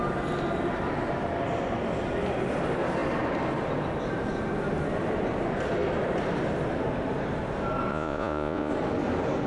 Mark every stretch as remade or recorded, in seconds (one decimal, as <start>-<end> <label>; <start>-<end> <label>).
0.0-7.9 recorded; 7.9-8.7 remade; 8.7-9.5 recorded